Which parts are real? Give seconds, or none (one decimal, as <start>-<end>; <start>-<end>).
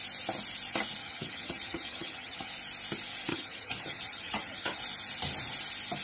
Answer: 0.0-1.0; 2.5-3.3; 4.8-6.0